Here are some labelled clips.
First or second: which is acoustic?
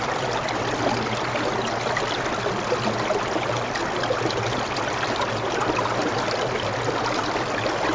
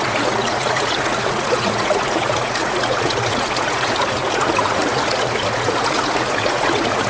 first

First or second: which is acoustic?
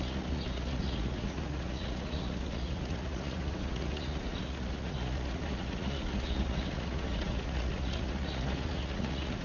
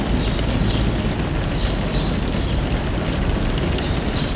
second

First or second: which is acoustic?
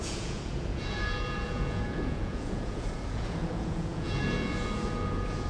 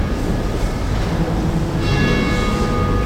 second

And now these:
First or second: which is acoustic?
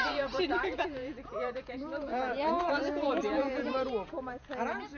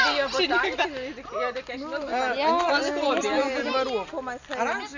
second